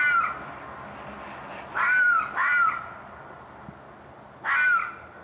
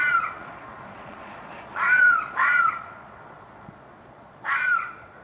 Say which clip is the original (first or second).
first